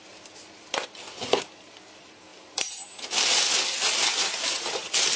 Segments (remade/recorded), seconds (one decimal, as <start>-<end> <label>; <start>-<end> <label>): 0.0-5.2 recorded